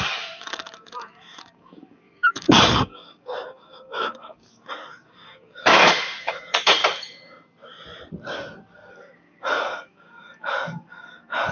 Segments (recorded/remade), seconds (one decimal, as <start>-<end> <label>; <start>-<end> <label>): 0.0-6.8 remade; 6.8-8.9 recorded; 8.9-11.5 remade

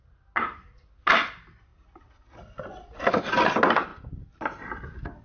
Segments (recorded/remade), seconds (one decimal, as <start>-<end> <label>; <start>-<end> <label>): 0.0-5.2 recorded